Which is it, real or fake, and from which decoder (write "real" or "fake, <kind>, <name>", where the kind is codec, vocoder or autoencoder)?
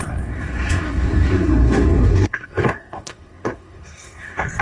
fake, codec, SNAC